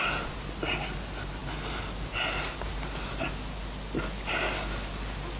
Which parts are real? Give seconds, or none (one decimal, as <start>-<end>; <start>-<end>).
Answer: 0.0-1.4; 4.3-5.4